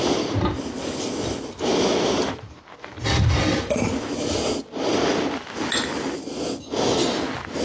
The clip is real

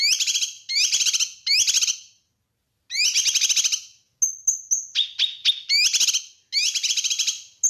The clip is real